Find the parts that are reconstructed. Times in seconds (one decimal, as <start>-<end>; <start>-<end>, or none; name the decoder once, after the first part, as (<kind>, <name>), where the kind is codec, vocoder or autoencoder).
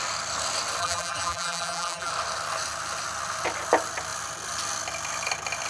0.8-2.1 (vocoder, BigVGAN v2)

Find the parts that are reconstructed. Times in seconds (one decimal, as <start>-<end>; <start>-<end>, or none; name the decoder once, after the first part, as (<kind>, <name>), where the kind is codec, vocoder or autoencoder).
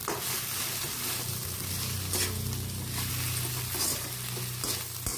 none